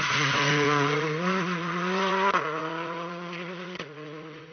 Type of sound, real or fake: fake